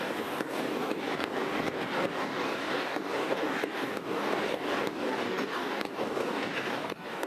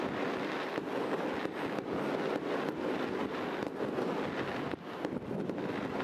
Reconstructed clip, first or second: first